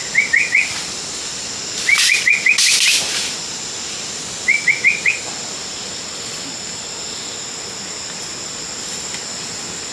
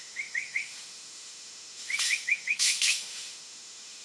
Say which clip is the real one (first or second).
first